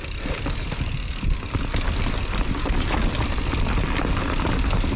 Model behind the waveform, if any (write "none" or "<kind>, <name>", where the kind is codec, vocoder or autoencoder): none